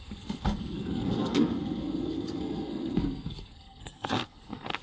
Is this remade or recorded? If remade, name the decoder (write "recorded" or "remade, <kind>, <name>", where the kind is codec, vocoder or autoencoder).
remade, codec, SNAC